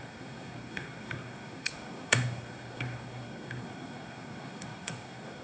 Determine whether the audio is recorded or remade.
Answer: remade